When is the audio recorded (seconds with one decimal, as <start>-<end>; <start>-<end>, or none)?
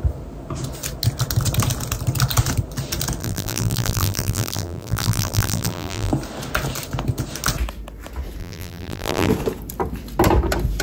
0.0-3.2; 6.1-8.4; 9.3-10.8